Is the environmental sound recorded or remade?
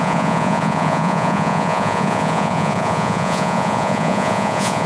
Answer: remade